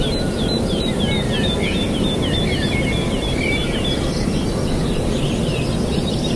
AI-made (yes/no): no